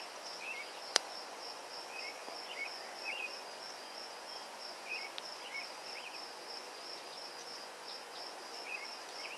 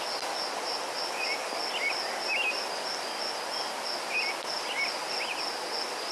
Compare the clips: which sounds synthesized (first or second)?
first